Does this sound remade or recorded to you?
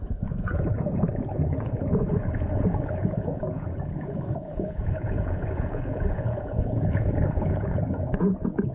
remade